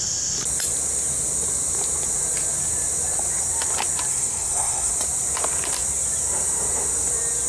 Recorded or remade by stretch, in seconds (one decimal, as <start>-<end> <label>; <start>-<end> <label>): 0.0-4.1 recorded; 4.1-4.9 remade; 4.9-7.5 recorded